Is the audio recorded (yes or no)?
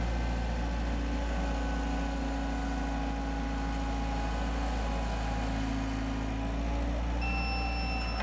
yes